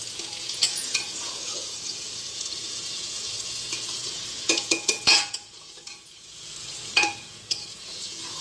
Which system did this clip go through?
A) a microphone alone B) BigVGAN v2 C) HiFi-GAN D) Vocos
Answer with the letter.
D